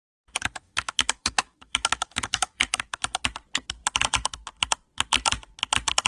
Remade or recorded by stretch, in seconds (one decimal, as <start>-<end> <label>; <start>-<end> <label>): 0.0-0.6 recorded; 0.6-3.0 remade; 3.0-6.1 recorded